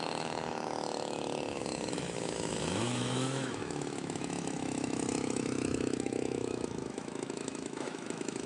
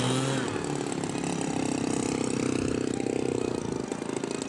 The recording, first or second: second